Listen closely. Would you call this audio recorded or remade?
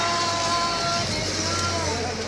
recorded